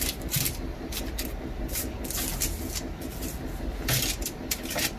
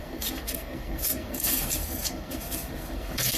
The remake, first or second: second